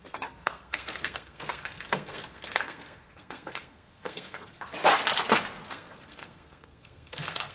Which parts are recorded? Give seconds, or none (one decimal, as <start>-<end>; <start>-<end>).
4.7-5.7